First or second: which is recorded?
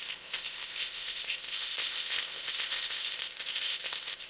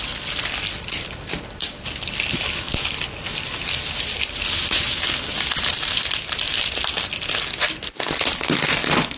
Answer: second